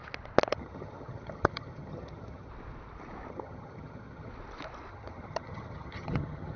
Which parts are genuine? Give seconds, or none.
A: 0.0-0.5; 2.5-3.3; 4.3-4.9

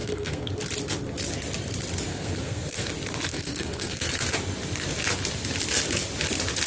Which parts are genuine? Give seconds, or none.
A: 0.5-2.1; 2.9-3.3; 4.1-6.7